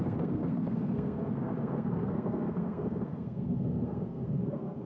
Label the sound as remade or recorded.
remade